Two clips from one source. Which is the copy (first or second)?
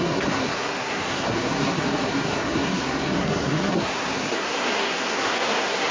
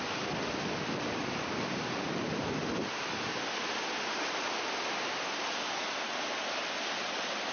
first